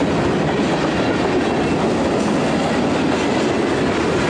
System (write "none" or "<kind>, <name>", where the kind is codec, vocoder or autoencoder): none